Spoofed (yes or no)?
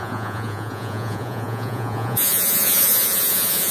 yes